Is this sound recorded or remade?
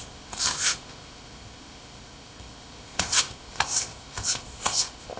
remade